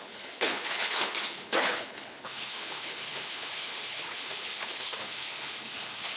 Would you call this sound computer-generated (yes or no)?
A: yes